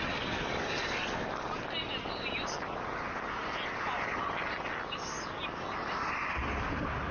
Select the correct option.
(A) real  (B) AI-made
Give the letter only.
A